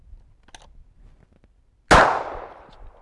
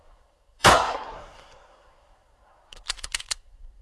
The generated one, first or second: second